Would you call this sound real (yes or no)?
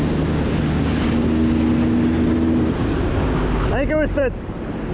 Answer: yes